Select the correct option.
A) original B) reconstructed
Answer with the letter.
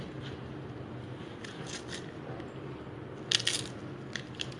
A